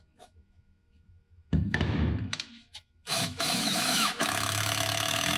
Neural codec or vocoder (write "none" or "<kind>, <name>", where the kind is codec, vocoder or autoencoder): autoencoder, DAC-VAE